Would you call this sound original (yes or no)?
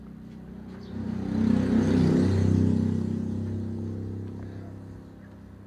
yes